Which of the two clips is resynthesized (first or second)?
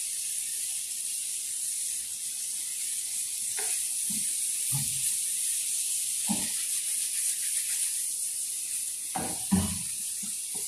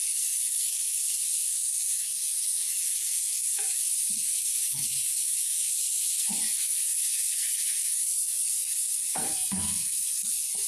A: second